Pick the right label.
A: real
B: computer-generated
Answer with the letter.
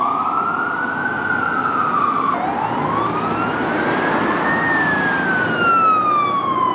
A